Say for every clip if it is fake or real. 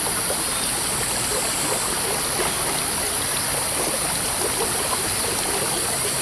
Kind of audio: real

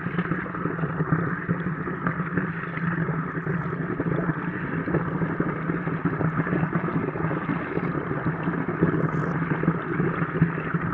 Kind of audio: real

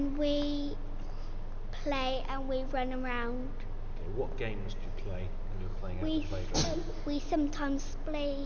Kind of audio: real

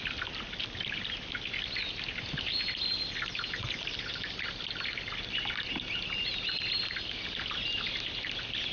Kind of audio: real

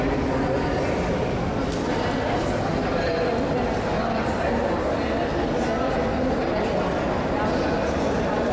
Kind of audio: real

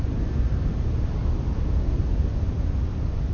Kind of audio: real